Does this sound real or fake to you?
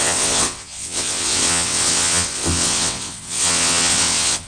fake